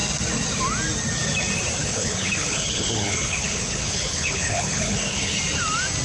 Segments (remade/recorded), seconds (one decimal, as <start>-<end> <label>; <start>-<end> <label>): 0.0-1.8 recorded; 1.8-5.4 remade; 5.4-6.0 recorded